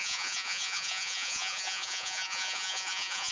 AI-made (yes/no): yes